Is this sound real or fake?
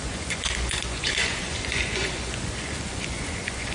fake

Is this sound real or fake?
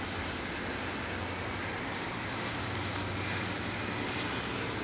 real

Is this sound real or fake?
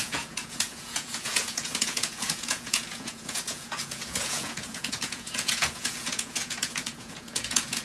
fake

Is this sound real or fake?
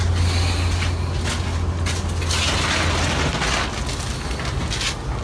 real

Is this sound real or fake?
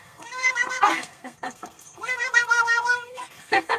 fake